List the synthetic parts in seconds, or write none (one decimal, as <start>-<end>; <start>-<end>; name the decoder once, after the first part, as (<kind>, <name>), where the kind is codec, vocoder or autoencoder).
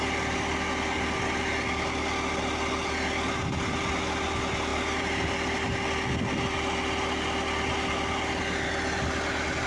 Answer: 4.7-5.7 (vocoder, BigVGAN v2)